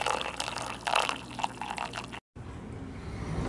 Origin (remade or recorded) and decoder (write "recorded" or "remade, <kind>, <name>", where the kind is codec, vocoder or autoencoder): recorded